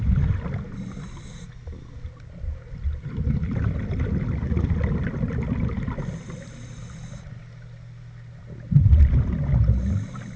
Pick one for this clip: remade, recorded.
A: recorded